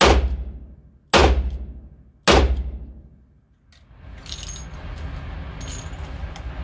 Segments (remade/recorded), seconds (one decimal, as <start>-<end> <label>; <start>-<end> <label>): 0.0-6.6 recorded